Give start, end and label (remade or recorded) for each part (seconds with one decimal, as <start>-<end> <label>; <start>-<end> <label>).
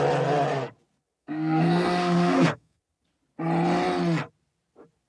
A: 0.0-1.2 recorded; 1.2-2.8 remade; 2.8-5.1 recorded